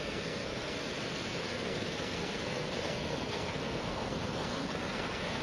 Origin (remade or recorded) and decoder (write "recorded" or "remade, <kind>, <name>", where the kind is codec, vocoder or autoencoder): remade, codec, SNAC